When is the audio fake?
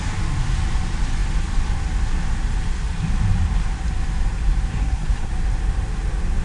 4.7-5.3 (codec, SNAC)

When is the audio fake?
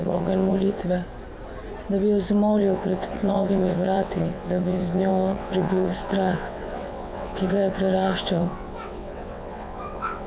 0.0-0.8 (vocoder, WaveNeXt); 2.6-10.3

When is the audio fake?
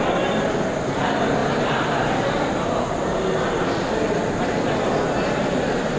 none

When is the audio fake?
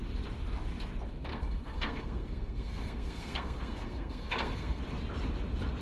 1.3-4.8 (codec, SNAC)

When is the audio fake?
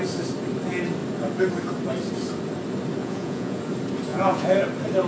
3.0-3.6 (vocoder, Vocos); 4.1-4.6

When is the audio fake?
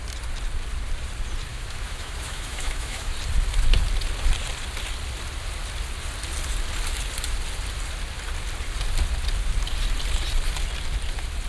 1.5-3.1 (autoencoder, DAC-VAE)